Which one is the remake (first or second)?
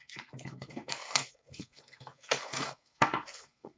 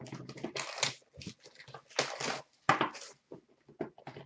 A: first